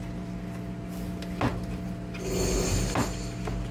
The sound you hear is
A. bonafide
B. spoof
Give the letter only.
A